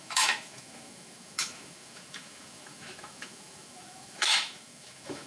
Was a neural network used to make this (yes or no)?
yes